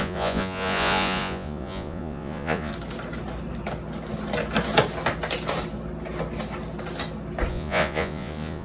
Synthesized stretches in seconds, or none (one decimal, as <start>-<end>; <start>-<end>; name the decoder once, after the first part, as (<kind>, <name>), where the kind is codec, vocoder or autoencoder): 0.0-2.7 (vocoder, Vocos); 7.5-8.6